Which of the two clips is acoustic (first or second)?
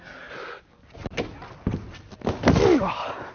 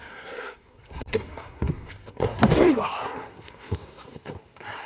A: first